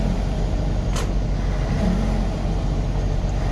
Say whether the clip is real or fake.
real